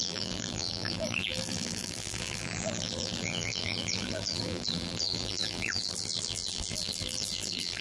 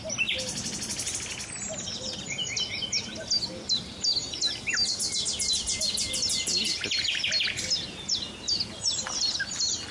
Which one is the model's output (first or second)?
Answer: first